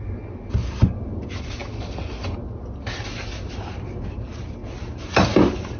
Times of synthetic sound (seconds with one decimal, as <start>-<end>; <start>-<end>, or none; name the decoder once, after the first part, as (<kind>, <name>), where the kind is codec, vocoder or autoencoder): none